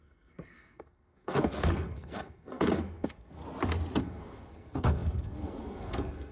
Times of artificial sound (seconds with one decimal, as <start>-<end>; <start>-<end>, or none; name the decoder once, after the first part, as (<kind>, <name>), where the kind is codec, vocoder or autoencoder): 0.0-3.4 (codec, SNAC); 4.0-6.3